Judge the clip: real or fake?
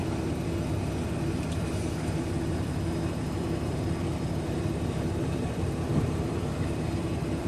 fake